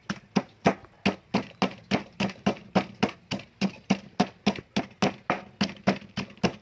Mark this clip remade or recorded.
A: recorded